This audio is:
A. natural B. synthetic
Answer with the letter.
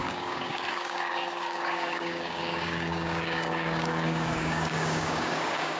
B